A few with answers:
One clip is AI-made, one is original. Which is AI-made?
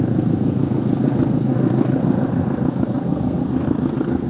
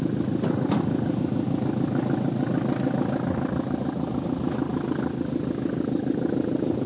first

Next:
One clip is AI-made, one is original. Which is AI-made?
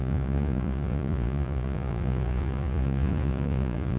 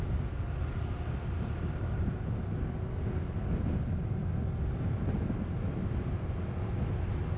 first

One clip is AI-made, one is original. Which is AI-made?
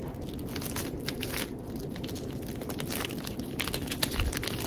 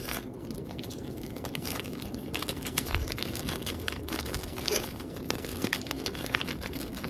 second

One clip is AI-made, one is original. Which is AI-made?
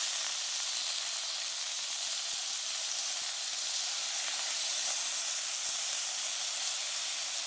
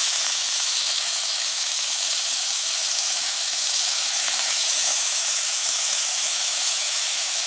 second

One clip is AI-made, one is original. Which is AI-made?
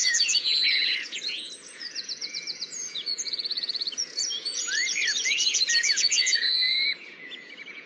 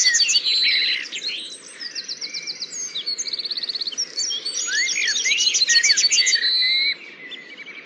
first